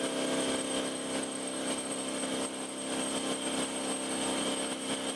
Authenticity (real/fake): real